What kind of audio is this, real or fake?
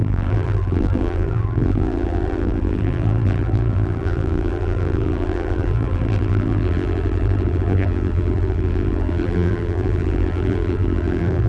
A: fake